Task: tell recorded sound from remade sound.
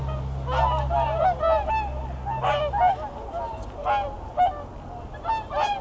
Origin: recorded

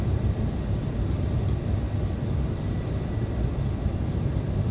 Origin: remade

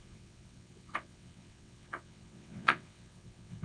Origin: remade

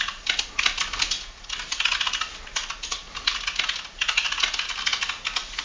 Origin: recorded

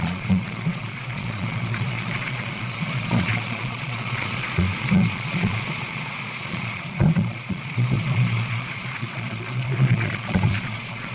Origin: remade